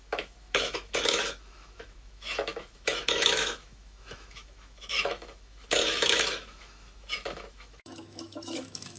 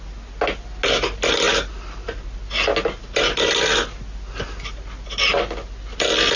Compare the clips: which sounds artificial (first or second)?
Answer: first